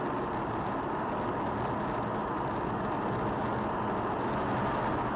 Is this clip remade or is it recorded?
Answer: recorded